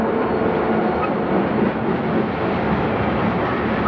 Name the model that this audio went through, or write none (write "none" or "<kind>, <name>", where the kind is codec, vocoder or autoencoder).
none